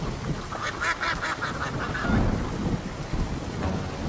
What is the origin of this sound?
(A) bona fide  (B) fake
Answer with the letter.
A